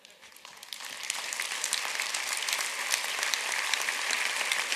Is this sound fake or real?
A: fake